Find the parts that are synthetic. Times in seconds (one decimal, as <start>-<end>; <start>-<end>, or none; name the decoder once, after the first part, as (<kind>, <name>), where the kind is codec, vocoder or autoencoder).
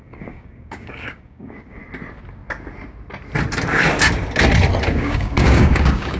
0.0-1.8 (codec, DAC); 4.9-6.2